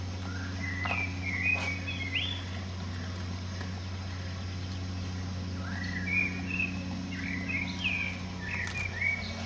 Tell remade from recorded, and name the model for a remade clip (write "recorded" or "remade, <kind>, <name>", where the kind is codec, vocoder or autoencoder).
recorded